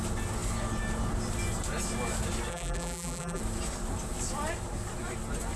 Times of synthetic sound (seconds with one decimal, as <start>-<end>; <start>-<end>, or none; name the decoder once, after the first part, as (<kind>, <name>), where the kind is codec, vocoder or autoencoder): 2.5-3.4 (vocoder, BigVGAN v2)